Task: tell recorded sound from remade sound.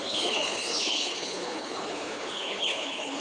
remade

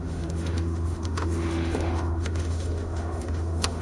remade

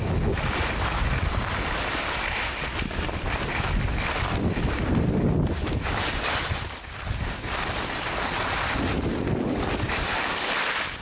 recorded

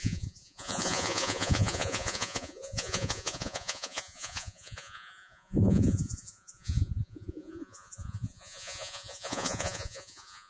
remade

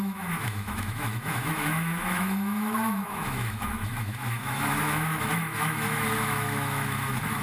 remade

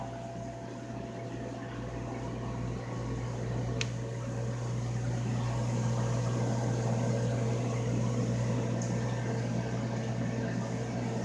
recorded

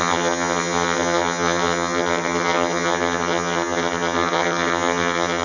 remade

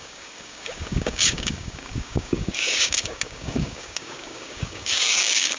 remade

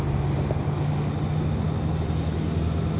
recorded